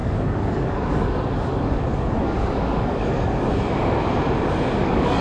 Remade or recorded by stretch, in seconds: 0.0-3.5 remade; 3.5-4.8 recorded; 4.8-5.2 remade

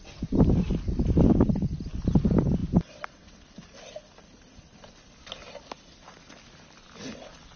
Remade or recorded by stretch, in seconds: 0.0-7.6 recorded

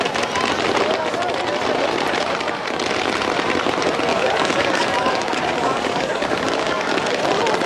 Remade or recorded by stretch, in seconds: 0.0-4.1 recorded; 4.1-7.2 remade; 7.2-7.7 recorded

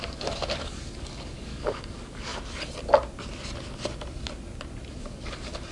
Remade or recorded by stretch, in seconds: 0.0-2.3 remade; 2.3-5.0 recorded; 5.0-5.7 remade

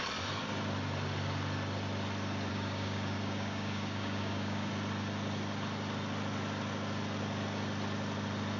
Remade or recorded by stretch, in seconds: 0.0-2.5 recorded; 2.5-4.7 remade; 4.7-8.6 recorded

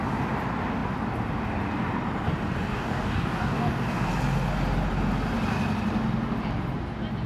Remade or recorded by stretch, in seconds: 0.0-2.7 recorded; 2.7-4.1 remade; 4.1-7.3 recorded